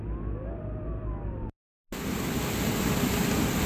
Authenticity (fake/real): real